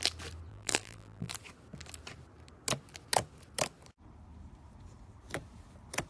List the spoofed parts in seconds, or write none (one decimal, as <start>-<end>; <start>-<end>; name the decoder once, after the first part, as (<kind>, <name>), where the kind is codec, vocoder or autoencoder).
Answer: 0.5-1.3 (vocoder, BigVGAN v2)